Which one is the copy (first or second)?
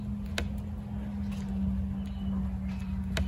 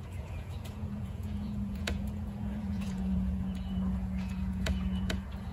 second